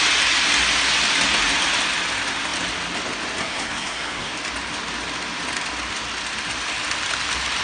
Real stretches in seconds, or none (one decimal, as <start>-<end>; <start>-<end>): 0.0-3.4; 4.3-7.6